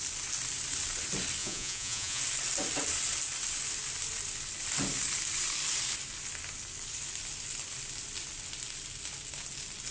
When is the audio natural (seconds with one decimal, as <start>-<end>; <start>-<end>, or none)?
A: 0.0-1.4; 2.2-9.9